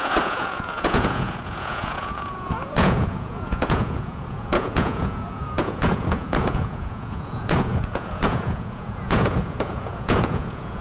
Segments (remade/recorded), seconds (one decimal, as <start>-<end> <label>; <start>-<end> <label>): 0.0-10.8 remade